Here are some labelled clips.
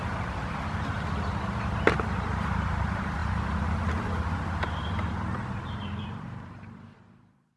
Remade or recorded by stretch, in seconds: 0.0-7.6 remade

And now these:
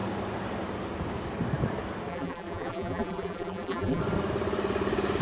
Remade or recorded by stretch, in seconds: 0.0-2.1 recorded; 2.1-4.0 remade; 4.0-5.2 recorded

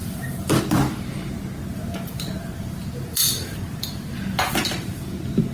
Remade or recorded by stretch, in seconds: 0.0-0.6 remade; 0.6-1.7 recorded; 1.7-5.0 remade; 5.0-5.5 recorded

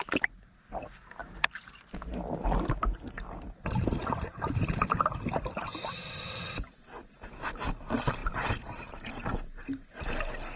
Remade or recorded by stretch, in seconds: 0.0-1.2 recorded; 1.2-1.7 remade; 1.7-8.2 recorded; 8.2-10.1 remade; 10.1-10.6 recorded

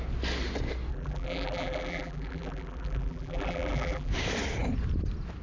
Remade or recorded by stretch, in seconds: 0.0-0.9 recorded; 0.9-4.1 remade; 4.1-5.4 recorded

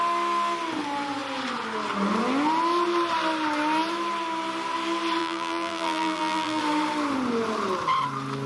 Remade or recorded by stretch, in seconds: 0.0-5.2 recorded; 5.2-6.6 remade; 6.6-8.5 recorded